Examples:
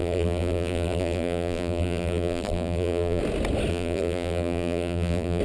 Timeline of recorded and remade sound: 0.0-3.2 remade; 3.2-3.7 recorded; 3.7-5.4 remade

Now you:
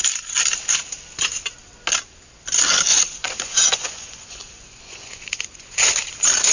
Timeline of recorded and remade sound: 0.0-2.9 recorded; 2.9-6.0 remade; 6.0-6.5 recorded

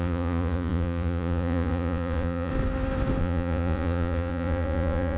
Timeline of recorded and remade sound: 0.0-2.5 remade; 2.5-3.2 recorded; 3.2-5.2 remade

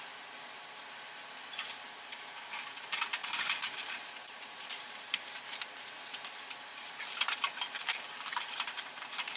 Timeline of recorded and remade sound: 0.0-9.4 remade

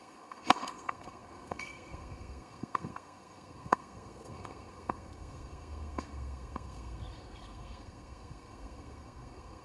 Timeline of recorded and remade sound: 0.0-9.6 remade

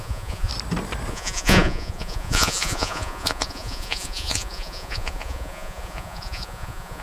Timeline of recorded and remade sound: 0.0-0.5 remade; 0.5-1.1 recorded; 1.1-7.0 remade